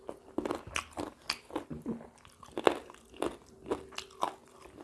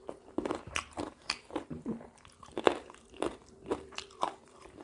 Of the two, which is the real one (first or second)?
first